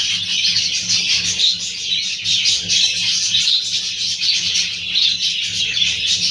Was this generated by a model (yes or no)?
no